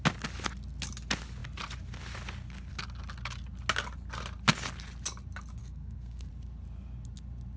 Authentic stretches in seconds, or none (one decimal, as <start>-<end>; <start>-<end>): 0.0-5.6; 6.3-7.6